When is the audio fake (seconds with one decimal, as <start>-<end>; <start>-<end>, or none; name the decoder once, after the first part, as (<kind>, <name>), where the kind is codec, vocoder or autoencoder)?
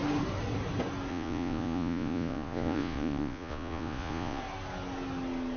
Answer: 1.1-4.4 (vocoder, Vocos)